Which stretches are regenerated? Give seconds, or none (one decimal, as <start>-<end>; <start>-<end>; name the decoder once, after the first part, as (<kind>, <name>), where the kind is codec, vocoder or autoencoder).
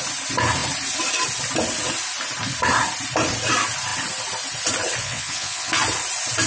5.0-5.7 (vocoder, WaveNeXt)